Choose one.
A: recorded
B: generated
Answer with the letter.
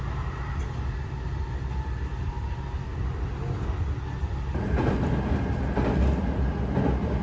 A